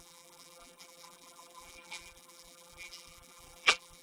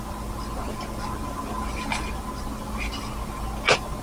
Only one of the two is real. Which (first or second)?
second